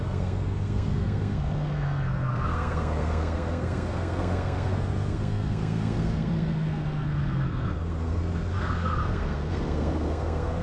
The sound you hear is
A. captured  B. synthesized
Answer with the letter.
B